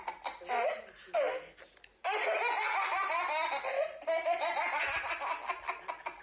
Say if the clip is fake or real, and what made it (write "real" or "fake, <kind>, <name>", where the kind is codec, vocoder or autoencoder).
real